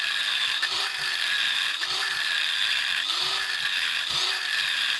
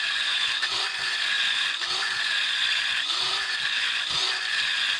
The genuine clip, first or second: first